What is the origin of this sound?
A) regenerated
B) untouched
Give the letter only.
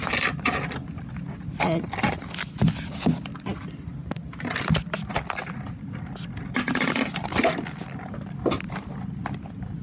B